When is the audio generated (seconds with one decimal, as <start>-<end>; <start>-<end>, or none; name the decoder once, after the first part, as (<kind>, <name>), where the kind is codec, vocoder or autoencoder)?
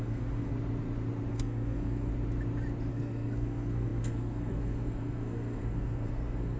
0.0-0.5 (codec, SNAC); 1.3-2.1; 2.9-6.6